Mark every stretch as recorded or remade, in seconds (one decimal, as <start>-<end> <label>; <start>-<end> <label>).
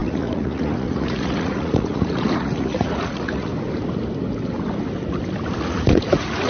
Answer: 0.0-3.5 remade; 3.5-5.6 recorded; 5.6-6.5 remade